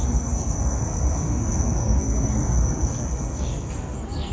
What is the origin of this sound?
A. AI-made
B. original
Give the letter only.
A